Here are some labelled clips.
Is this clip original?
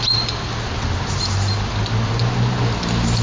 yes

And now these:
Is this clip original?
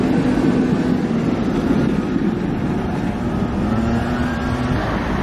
yes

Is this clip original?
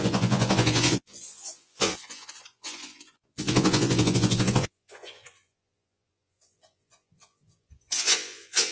no